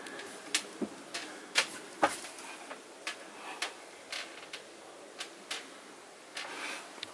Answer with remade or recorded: recorded